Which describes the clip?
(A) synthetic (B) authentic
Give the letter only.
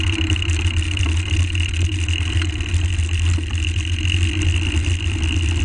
B